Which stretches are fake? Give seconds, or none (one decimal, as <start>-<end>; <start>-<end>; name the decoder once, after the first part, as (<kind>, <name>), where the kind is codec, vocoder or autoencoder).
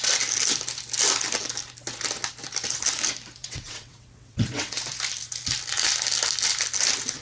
3.4-4.8 (vocoder, WaveNeXt)